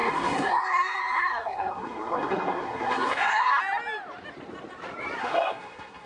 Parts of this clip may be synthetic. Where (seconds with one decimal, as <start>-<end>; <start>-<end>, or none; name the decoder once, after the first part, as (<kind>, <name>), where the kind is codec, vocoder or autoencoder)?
0.0-3.6 (codec, SNAC); 5.2-6.1